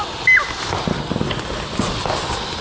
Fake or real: real